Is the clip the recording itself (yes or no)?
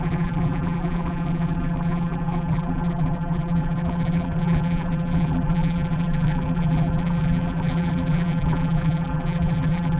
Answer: no